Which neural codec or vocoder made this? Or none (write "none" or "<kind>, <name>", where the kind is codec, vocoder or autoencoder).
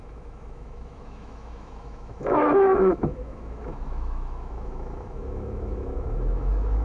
autoencoder, DAC-VAE